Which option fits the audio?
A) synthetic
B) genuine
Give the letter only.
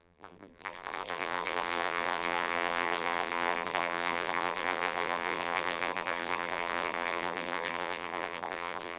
A